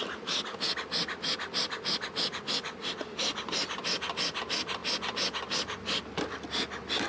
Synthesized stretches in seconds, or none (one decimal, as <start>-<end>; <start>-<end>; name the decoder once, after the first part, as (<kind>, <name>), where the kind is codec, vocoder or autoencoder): none